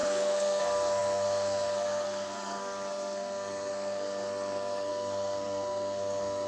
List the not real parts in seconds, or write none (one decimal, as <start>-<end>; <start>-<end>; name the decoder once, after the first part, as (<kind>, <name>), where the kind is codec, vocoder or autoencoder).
0.0-6.5 (codec, SNAC)